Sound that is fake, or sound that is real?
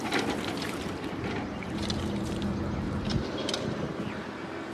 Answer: fake